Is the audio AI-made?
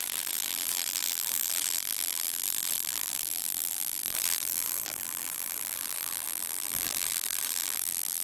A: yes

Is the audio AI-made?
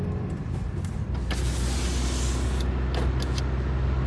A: no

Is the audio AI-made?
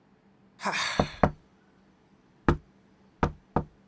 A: no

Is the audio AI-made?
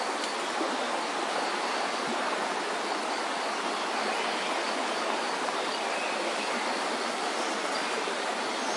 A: no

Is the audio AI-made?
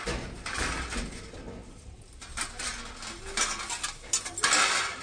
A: no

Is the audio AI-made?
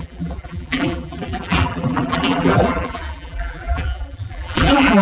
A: yes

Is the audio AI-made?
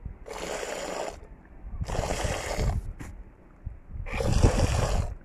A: no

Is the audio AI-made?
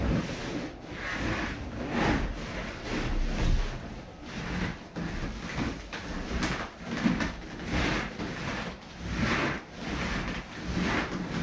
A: no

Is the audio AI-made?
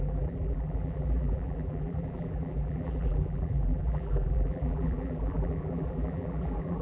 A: yes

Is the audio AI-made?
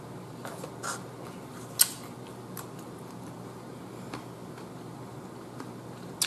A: no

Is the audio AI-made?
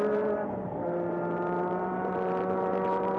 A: yes